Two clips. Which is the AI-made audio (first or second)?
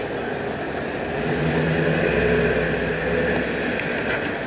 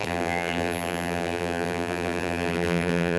second